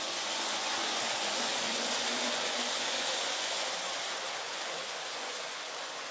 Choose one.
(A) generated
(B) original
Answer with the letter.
A